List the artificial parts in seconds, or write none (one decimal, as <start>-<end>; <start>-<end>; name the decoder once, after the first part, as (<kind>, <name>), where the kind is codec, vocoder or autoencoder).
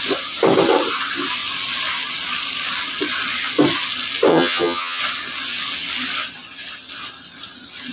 4.3-5.0 (vocoder, HiFi-GAN)